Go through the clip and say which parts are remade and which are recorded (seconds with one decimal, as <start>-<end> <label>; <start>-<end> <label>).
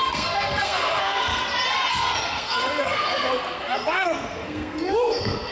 0.0-1.4 remade; 1.4-1.9 recorded; 1.9-5.5 remade